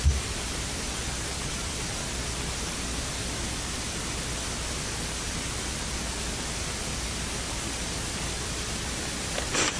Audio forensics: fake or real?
real